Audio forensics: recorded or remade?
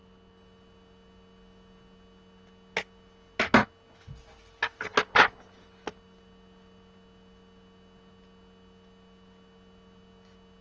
recorded